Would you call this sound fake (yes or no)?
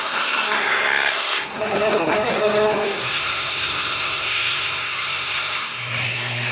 yes